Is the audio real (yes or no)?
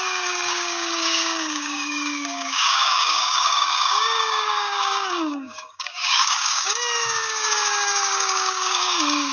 no